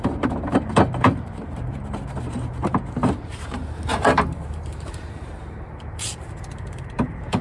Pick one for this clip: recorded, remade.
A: remade